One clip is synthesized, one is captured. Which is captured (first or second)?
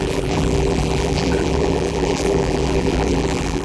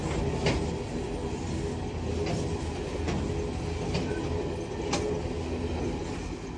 second